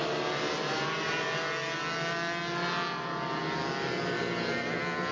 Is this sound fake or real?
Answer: real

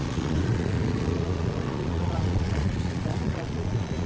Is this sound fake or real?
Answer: fake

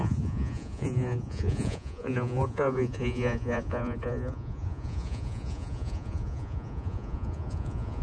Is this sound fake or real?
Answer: fake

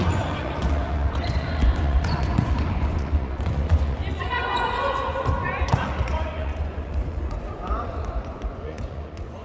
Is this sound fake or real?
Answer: fake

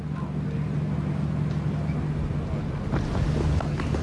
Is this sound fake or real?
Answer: real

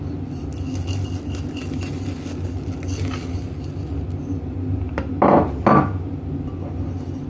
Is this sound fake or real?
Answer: real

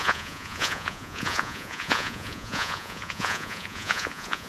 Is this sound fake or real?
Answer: fake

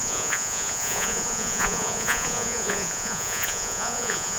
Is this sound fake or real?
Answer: fake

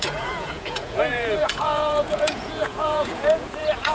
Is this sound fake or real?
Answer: fake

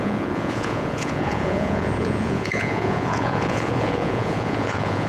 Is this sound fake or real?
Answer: fake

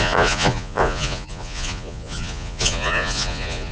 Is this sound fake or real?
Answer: fake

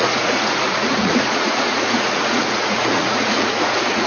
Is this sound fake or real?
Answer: fake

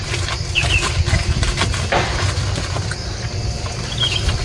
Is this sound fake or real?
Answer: real